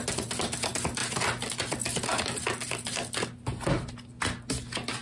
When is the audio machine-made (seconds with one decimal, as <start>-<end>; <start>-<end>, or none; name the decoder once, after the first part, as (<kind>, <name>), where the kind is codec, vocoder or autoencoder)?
none